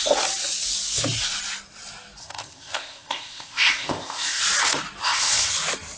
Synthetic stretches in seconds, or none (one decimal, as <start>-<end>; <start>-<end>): 2.2-4.4; 5.0-5.5